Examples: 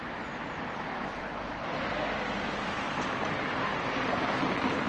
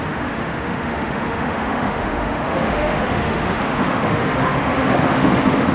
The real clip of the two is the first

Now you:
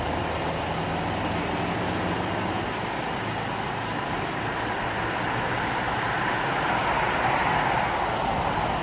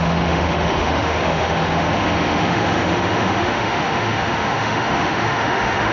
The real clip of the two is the first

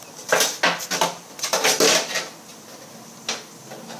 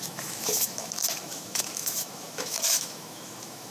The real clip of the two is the first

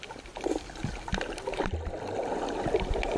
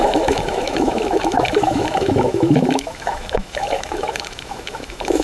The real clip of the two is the first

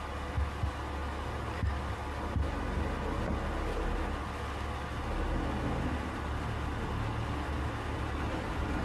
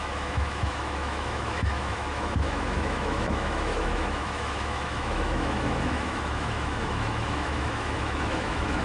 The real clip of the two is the first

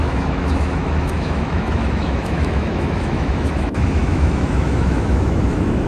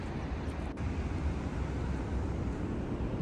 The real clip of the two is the second